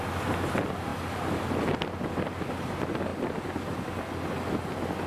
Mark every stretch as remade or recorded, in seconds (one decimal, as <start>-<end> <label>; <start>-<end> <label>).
0.0-5.1 recorded